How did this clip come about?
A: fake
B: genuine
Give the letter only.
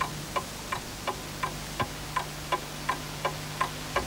B